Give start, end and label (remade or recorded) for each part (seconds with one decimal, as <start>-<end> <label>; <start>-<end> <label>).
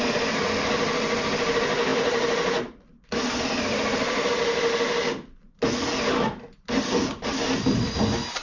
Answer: 0.0-8.4 recorded